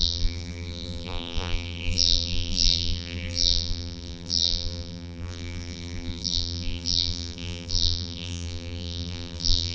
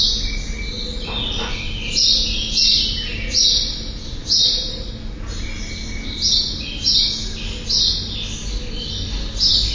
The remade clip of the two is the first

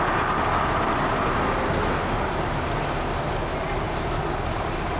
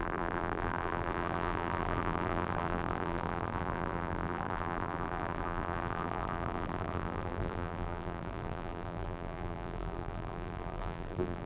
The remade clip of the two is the second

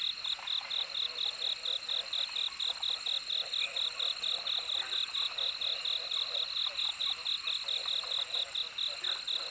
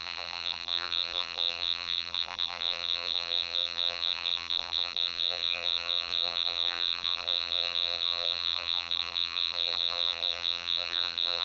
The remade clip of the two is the second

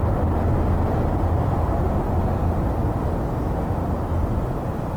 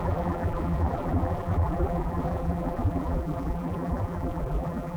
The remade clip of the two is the second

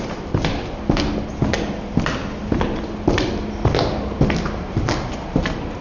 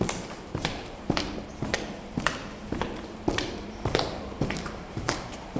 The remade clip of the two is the second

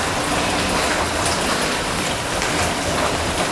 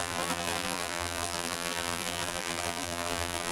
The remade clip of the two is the second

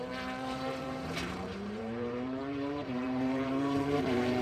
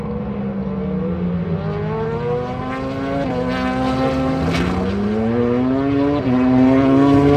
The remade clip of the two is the first